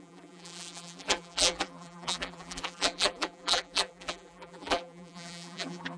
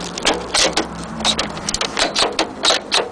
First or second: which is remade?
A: first